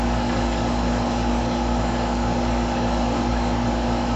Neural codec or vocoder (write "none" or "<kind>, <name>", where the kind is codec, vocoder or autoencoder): codec, DAC